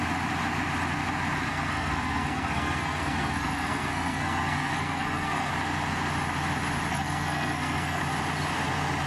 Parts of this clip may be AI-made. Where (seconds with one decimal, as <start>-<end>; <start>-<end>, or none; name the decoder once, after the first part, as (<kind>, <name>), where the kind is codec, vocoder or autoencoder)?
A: 1.5-5.5 (codec, SNAC); 6.9-8.0